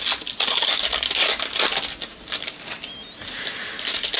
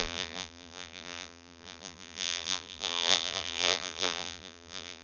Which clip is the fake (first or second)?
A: second